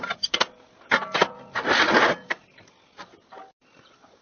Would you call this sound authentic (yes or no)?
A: yes